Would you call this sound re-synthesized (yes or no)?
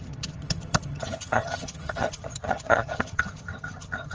yes